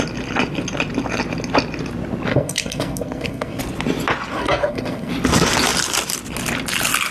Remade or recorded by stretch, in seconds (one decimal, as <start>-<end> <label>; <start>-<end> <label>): 0.0-2.3 recorded; 2.3-3.6 remade; 3.6-4.3 recorded; 4.3-5.1 remade; 5.1-7.1 recorded